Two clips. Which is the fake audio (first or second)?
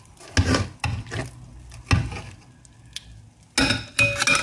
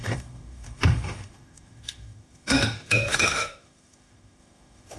second